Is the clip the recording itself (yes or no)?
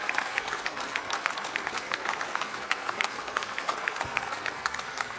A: no